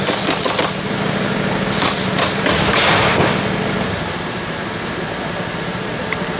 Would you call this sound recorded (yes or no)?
no